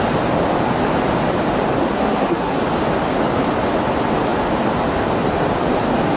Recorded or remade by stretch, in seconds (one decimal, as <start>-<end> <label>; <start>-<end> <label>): 0.0-1.8 recorded; 1.8-2.6 remade; 2.6-6.2 recorded